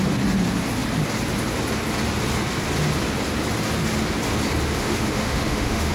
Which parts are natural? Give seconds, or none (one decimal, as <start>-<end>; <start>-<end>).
0.0-4.8